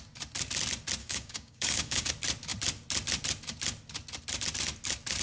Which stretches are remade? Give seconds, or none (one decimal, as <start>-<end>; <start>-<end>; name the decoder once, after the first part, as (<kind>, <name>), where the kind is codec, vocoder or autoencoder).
1.0-2.1 (codec, DAC)